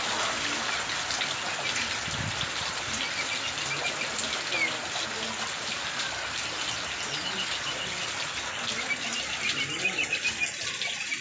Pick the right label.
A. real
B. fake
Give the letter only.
A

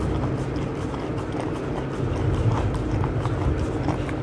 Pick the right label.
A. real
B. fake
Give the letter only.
A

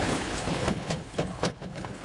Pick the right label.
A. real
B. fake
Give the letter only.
B